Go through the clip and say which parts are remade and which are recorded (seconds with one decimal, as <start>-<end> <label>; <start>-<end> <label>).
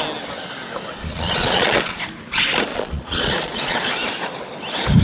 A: 0.0-0.9 recorded; 0.9-2.0 remade; 2.0-2.7 recorded; 2.7-3.9 remade; 3.9-5.0 recorded